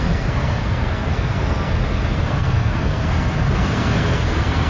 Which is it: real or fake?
fake